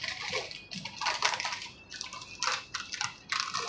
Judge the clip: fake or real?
real